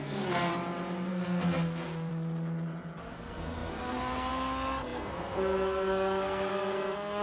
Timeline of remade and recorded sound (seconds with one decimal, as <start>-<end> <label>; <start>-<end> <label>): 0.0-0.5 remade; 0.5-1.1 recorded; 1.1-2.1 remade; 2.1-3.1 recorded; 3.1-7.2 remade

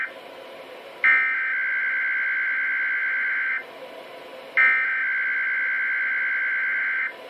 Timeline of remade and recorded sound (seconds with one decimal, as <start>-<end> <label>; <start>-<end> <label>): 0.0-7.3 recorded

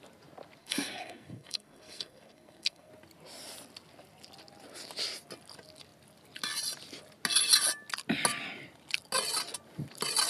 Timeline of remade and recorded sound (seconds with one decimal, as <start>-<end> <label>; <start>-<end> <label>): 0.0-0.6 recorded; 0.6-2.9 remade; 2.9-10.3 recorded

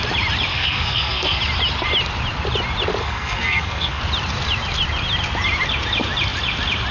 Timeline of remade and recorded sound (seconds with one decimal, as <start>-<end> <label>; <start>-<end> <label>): 0.0-0.5 recorded; 0.5-1.4 remade; 1.4-3.0 recorded; 3.0-4.0 remade; 4.0-6.9 recorded

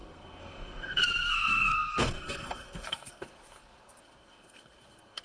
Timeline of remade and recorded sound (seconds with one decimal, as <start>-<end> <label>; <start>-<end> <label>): 0.0-5.2 remade